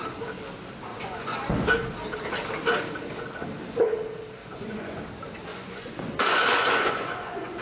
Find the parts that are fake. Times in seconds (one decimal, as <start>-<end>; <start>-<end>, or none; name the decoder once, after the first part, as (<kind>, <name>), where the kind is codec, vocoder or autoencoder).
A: 0.9-1.6 (vocoder, Vocos); 4.4-5.0; 5.5-7.6